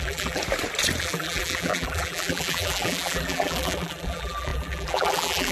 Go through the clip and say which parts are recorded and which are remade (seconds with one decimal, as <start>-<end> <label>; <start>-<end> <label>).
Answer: 0.0-0.4 remade; 0.4-1.0 recorded; 1.0-5.5 remade